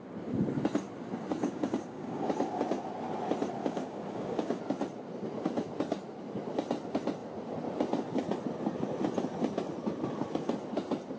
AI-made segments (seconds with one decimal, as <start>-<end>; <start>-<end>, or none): 1.4-2.3; 3.6-4.6